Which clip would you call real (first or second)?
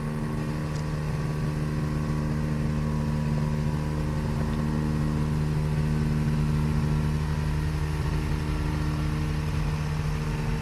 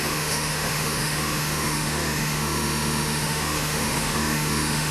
first